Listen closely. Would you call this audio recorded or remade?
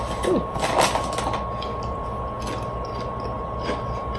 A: recorded